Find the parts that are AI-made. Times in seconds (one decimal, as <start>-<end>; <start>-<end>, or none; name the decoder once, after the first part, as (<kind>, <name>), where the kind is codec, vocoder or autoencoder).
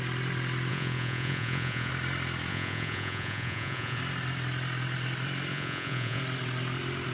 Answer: 0.7-1.9 (vocoder, Vocos); 2.5-4.0; 5.5-6.2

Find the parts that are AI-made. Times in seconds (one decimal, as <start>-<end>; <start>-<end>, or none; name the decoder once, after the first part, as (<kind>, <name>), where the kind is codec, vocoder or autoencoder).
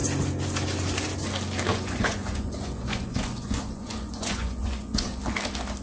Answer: 1.7-5.2 (vocoder, Vocos)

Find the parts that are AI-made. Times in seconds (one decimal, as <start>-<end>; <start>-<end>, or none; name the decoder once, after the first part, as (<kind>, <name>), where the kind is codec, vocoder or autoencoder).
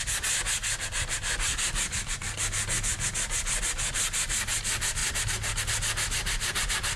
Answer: none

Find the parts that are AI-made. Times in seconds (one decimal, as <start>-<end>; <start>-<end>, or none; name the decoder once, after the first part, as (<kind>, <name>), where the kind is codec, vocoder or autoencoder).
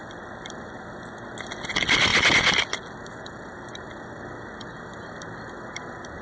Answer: none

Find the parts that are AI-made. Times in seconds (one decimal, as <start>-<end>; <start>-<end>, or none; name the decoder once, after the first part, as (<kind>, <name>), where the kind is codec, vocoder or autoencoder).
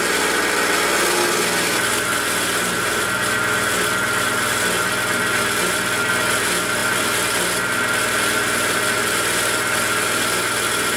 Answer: none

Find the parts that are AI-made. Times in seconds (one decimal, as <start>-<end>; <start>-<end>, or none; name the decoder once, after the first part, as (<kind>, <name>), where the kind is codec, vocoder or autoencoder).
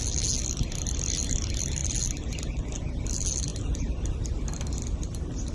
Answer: none